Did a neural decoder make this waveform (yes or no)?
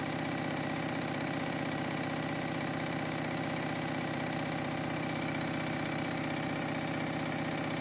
yes